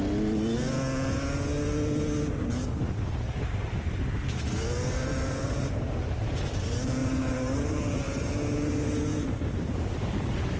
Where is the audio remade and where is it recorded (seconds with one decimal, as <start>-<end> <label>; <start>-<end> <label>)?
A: 0.0-5.1 recorded; 5.1-6.6 remade; 6.6-7.0 recorded; 7.0-7.7 remade; 7.7-10.6 recorded